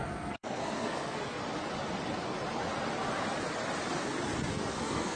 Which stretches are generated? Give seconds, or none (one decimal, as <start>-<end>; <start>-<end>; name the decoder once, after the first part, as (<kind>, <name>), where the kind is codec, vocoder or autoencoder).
0.0-1.4 (codec, SNAC); 4.5-5.2